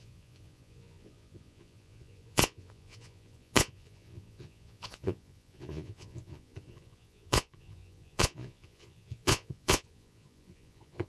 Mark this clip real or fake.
fake